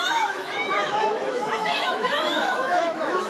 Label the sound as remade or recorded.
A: remade